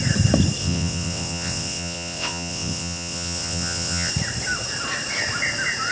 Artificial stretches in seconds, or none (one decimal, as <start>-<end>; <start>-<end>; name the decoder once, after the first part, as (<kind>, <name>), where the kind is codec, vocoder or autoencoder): 0.6-4.1 (vocoder, WaveNeXt)

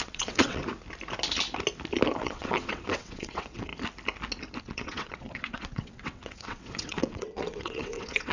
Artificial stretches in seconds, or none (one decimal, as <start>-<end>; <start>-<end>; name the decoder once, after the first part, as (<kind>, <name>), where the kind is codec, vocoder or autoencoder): 0.0-0.6 (vocoder, WaveNeXt); 2.2-3.7; 4.6-8.3

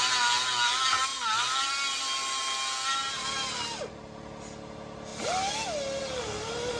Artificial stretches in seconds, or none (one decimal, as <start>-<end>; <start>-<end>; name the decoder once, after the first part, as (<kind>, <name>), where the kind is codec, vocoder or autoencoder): none

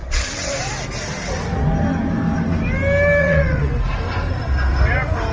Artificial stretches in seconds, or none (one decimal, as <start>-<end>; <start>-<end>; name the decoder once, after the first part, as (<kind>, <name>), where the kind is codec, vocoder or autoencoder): 0.0-0.6 (vocoder, WaveNeXt); 3.2-3.7

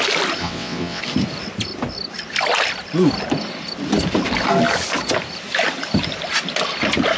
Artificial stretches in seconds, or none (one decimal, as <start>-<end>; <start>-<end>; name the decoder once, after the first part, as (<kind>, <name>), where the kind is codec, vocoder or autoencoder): 0.4-1.0 (vocoder, WaveNeXt)

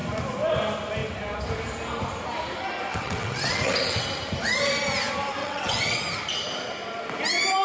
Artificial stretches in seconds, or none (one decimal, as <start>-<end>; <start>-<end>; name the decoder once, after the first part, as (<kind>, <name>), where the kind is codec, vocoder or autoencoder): 2.9-4.0 (vocoder, WaveNeXt); 5.4-6.0

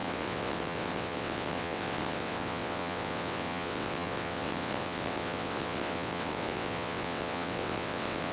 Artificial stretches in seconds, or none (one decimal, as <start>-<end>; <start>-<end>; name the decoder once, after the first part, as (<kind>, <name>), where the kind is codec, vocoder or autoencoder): 0.0-8.3 (vocoder, WaveNeXt)